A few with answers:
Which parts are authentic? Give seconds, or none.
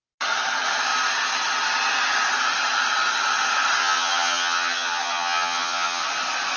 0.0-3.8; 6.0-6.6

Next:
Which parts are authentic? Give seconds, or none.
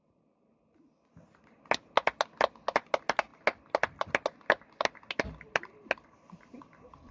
0.0-7.1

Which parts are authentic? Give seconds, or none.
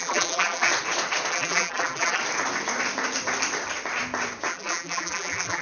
0.7-1.3; 2.2-4.5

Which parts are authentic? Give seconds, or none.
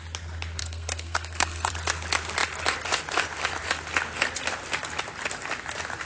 0.0-0.6; 1.7-6.0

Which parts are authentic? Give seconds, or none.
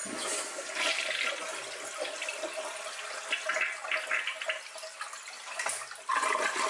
0.0-6.7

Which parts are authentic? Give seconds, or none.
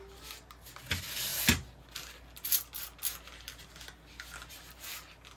0.0-5.4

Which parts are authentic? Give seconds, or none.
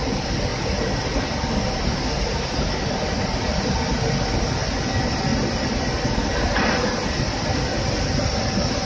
0.0-8.8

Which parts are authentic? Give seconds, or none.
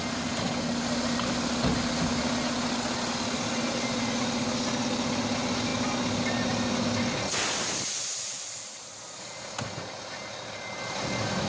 0.0-11.5